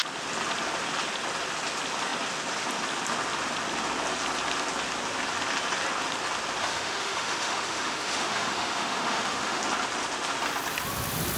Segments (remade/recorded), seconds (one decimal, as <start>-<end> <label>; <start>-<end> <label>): 0.0-6.6 recorded; 6.6-9.6 remade; 9.6-11.4 recorded